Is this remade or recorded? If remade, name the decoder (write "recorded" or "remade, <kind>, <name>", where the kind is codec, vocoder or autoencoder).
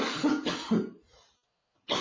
recorded